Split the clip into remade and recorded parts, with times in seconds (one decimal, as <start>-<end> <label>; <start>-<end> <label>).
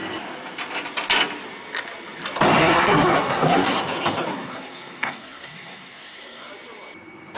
0.0-2.6 recorded; 2.6-3.8 remade; 3.8-4.3 recorded; 4.3-6.5 remade; 6.5-7.4 recorded